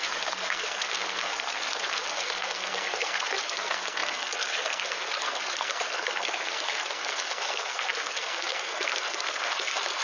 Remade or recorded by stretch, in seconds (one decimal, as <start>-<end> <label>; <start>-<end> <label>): 0.0-10.0 remade